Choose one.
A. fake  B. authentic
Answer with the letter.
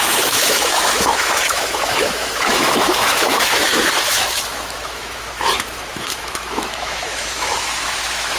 A